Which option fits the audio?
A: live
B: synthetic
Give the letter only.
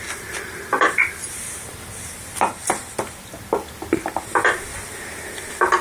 A